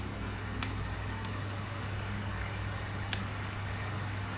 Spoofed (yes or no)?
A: yes